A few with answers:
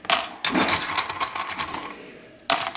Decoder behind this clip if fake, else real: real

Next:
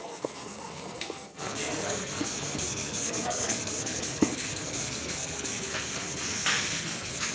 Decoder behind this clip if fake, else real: fake, codec, SNAC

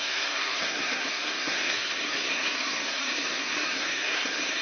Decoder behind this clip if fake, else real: fake, codec, SNAC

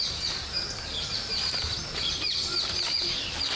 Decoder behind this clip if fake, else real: real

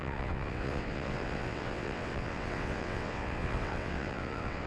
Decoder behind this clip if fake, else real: fake, vocoder, WaveNeXt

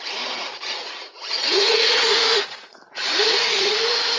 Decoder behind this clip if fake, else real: fake, vocoder, Vocos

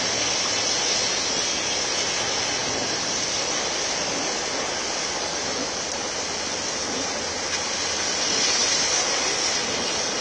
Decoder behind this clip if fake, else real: real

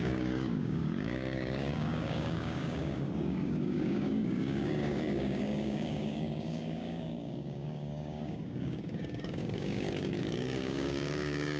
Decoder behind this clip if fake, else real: fake, codec, DAC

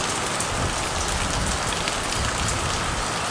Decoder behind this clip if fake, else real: real